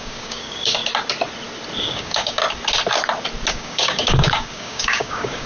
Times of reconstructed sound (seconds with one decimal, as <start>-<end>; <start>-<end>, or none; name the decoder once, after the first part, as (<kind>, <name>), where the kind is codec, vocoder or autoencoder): 0.0-0.8 (codec, DAC); 1.8-2.4; 3.5-5.5